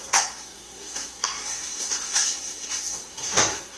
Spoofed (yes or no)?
yes